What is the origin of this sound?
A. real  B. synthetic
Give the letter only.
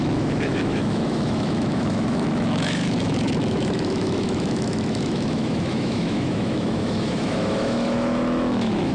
B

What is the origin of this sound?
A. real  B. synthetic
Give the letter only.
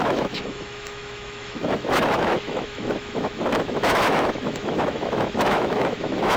B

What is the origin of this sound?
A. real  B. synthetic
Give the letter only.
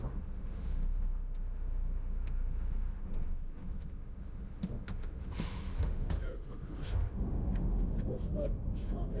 B